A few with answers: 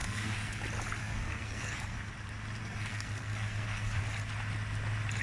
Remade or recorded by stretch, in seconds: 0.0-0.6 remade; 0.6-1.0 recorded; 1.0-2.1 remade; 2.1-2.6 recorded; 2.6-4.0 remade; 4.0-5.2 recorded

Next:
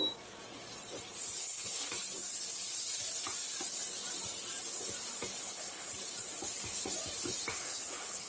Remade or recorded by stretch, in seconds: 0.0-1.4 recorded; 1.4-1.9 remade; 1.9-5.4 recorded; 5.4-5.9 remade; 5.9-7.5 recorded; 7.5-8.3 remade

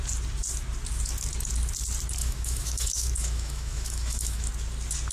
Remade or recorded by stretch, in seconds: 0.0-2.2 recorded; 2.2-4.5 remade; 4.5-5.1 recorded

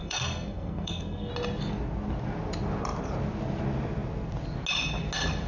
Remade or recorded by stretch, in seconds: 0.0-1.3 remade; 1.3-5.5 recorded

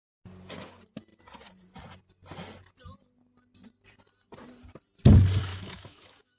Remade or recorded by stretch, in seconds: 0.0-5.5 recorded; 5.5-6.4 remade

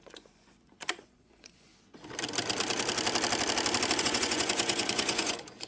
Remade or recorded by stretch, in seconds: 0.0-1.7 remade; 1.7-4.0 recorded; 4.0-5.7 remade

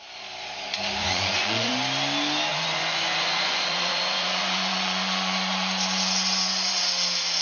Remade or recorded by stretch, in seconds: 0.0-1.0 recorded; 1.0-1.7 remade; 1.7-2.5 recorded; 2.5-6.8 remade; 6.8-7.4 recorded